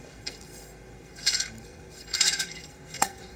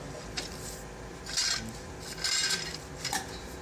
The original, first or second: second